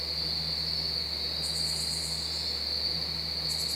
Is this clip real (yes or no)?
yes